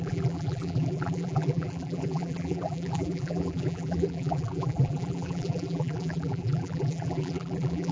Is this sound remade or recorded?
remade